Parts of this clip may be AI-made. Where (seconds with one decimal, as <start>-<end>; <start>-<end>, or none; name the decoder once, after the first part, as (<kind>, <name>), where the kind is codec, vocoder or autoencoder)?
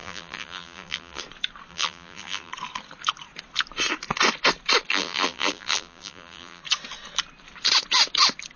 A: 0.0-1.2 (vocoder, BigVGAN v2); 1.7-2.5; 4.9-6.6